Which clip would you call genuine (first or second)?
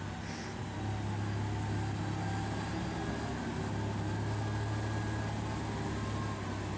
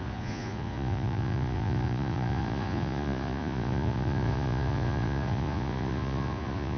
first